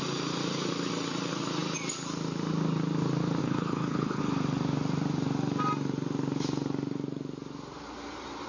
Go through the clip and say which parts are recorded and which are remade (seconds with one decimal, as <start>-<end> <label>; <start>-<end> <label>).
0.0-3.4 recorded; 3.4-4.2 remade; 4.2-8.5 recorded